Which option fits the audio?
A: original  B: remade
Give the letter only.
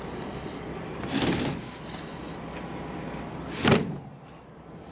A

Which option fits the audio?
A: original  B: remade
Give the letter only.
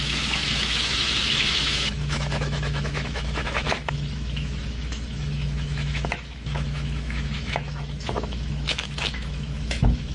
B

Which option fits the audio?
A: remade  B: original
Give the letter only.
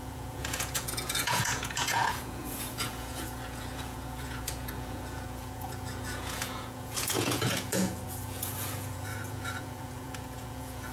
A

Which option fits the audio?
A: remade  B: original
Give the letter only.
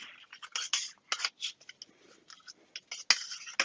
B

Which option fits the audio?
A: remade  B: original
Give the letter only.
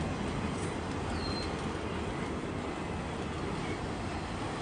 B